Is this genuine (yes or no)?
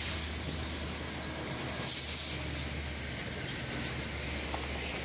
yes